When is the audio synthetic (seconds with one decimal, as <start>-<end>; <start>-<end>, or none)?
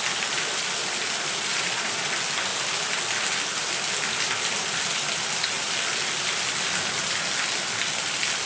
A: 1.5-2.0